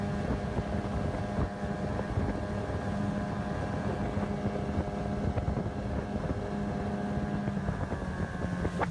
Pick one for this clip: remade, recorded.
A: recorded